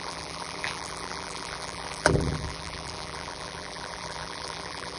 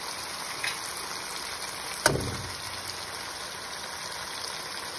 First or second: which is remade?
first